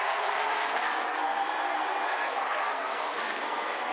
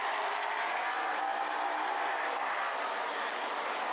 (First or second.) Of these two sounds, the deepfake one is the first